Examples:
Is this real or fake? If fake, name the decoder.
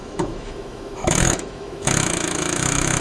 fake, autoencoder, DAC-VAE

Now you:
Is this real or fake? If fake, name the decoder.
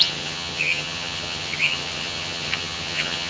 fake, vocoder, HiFi-GAN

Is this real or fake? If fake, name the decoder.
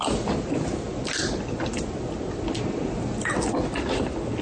real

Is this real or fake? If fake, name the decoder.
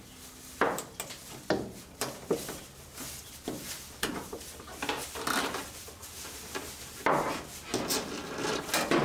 real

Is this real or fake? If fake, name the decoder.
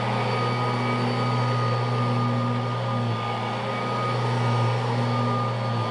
real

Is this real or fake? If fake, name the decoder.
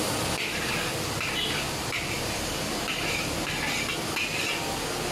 real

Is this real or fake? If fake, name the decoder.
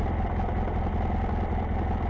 real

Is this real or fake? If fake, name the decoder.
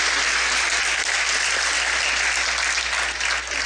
real